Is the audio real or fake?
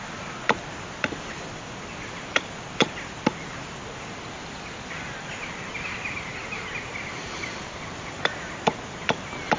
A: real